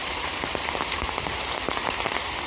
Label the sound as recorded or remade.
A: remade